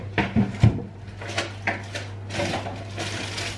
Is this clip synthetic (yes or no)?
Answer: no